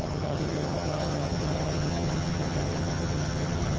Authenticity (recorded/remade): remade